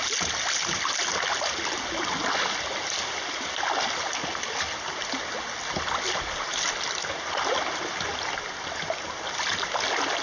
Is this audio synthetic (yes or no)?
no